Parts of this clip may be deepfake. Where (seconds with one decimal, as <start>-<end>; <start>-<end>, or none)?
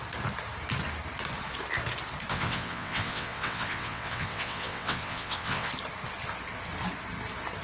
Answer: 2.3-5.7